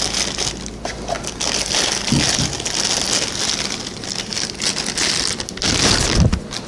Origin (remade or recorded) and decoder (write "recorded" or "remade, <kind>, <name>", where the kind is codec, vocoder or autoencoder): recorded